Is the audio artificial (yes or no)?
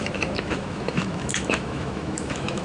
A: yes